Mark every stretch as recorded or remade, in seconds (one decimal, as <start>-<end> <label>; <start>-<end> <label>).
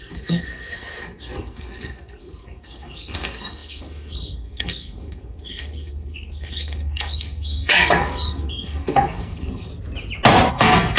0.0-9.7 remade; 9.7-10.5 recorded; 10.5-11.0 remade